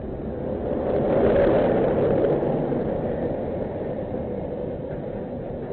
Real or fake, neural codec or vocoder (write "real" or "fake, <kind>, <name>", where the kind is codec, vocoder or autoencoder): real